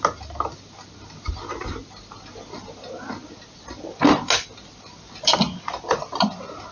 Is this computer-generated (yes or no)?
no